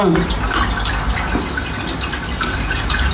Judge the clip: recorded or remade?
recorded